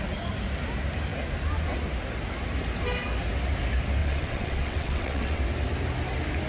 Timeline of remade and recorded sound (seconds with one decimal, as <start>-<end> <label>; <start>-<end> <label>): 0.0-4.0 recorded; 4.0-5.4 remade; 5.4-6.5 recorded